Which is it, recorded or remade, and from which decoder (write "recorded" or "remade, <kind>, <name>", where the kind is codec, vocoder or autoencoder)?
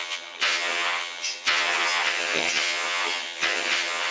remade, vocoder, HiFi-GAN